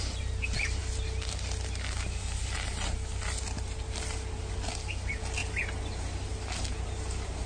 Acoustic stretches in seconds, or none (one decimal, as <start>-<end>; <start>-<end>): 0.0-7.5

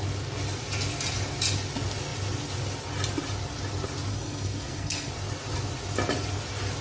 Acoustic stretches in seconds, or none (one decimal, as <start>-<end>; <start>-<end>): 0.0-4.1; 5.1-6.8

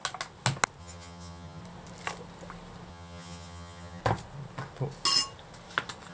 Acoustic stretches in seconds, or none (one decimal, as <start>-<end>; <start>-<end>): 0.0-0.8; 1.6-2.9; 4.0-6.1

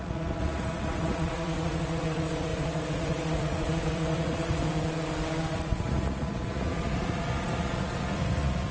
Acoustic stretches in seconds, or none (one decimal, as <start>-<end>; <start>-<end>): 4.6-5.5

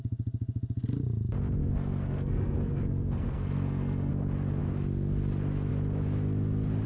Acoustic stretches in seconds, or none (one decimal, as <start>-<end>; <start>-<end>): 0.0-1.6; 4.1-6.9

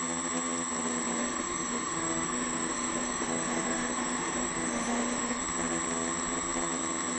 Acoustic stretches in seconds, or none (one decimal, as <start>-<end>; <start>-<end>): 0.0-1.2; 5.4-7.2